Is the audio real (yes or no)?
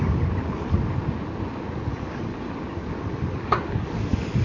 yes